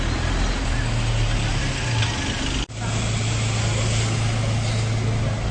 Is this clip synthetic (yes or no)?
no